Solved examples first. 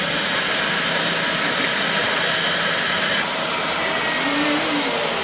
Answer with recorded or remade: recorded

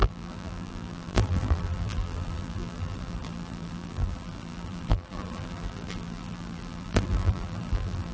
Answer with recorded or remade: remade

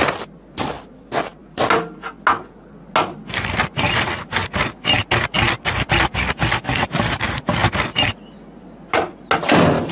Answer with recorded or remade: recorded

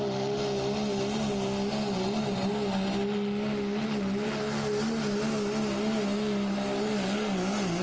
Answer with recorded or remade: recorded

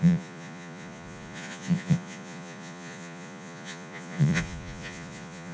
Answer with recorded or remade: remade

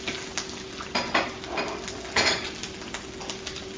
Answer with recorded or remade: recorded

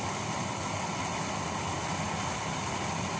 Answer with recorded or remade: recorded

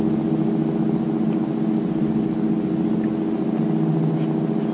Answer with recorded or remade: recorded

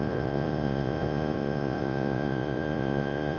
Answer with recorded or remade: remade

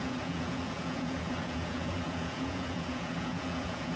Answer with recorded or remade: remade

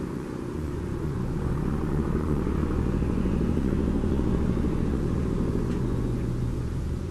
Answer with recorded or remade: remade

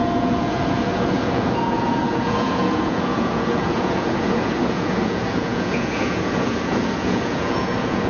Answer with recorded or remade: remade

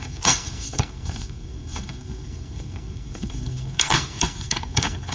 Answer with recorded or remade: remade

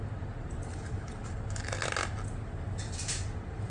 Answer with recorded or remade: recorded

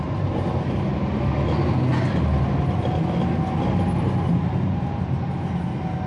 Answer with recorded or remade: recorded